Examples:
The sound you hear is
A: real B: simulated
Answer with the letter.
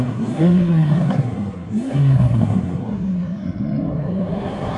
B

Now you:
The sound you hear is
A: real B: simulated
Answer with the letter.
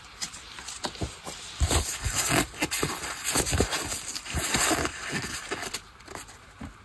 A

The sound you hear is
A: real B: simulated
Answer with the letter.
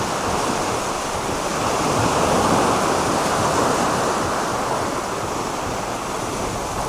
A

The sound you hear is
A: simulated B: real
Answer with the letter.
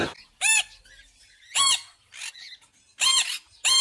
B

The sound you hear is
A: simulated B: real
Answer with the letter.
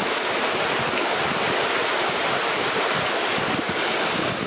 B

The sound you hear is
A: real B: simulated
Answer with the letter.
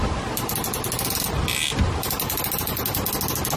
A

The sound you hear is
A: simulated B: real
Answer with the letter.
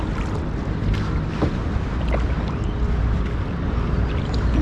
B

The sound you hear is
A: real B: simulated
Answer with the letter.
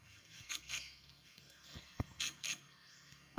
B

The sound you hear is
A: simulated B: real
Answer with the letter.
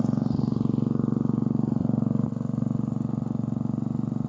B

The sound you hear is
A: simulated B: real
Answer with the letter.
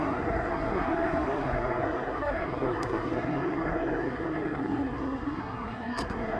A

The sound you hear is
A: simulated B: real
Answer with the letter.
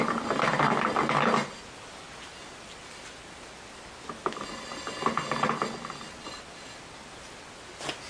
B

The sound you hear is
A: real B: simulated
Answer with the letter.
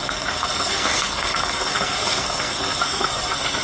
B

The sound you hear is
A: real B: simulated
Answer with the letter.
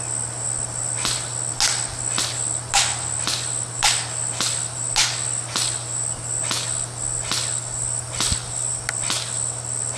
A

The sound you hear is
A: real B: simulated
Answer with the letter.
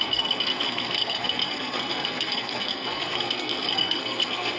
B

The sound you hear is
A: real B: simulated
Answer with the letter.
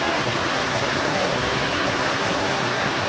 B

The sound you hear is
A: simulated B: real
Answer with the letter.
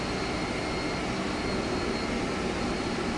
B